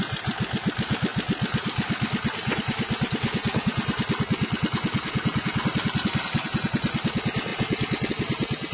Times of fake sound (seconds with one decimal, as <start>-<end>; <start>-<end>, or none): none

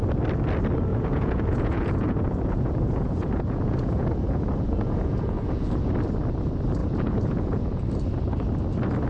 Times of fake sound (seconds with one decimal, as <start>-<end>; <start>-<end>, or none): 0.9-5.9; 6.8-7.8

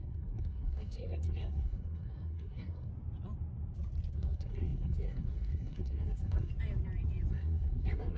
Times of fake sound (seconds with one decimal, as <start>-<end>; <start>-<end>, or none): 0.0-2.9; 4.1-6.5; 7.3-8.2